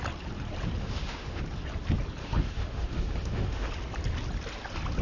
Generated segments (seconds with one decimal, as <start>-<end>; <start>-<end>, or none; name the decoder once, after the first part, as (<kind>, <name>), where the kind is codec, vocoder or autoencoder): 0.8-1.4 (autoencoder, DAC-VAE); 2.2-3.7